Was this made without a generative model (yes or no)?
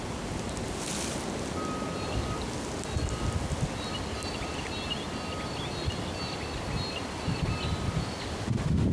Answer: yes